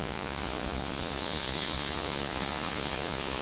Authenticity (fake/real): fake